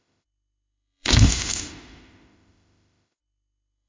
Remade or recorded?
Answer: remade